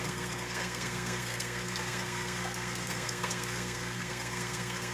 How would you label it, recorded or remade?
remade